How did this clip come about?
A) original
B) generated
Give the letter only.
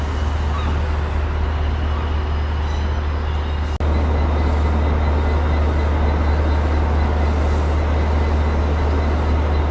A